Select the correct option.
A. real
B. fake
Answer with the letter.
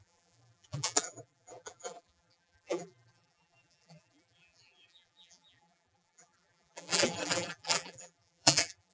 B